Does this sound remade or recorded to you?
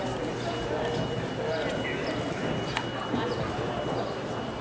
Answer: recorded